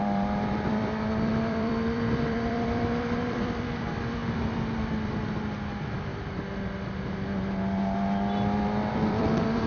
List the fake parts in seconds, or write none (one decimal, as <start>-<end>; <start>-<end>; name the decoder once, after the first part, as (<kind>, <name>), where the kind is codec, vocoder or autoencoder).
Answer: 0.0-6.1 (vocoder, BigVGAN v2); 8.9-9.7